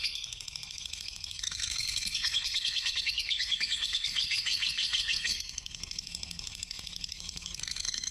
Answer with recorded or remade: remade